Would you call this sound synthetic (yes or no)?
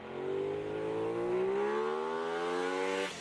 no